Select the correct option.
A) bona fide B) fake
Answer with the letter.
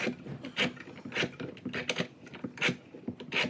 A